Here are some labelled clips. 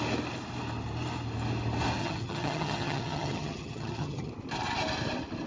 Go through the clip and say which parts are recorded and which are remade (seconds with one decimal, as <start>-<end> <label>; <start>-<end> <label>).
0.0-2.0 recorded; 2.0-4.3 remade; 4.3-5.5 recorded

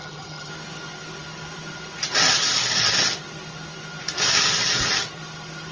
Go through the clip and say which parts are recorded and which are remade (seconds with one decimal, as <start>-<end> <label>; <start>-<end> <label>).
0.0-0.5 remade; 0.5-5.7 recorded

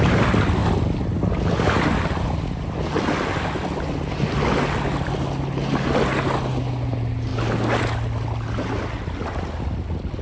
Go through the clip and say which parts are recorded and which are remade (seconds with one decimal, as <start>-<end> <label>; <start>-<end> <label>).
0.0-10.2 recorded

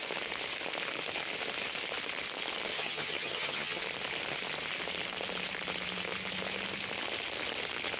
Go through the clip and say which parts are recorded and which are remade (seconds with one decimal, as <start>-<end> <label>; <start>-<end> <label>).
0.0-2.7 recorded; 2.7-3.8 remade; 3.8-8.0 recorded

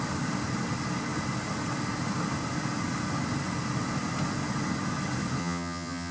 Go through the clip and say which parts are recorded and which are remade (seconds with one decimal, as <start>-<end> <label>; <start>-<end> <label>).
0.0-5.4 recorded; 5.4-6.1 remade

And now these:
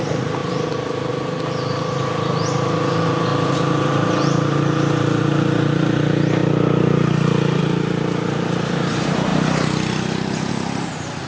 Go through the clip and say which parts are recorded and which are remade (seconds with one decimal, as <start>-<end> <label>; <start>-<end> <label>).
0.0-11.3 recorded

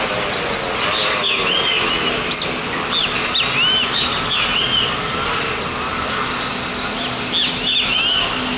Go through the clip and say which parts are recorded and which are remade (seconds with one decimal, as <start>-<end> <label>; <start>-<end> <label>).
0.0-8.6 recorded

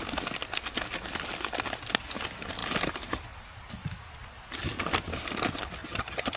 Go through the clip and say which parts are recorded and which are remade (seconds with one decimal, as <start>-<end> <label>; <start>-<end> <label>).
0.0-5.8 recorded; 5.8-6.4 remade